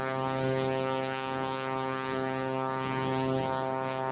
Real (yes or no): yes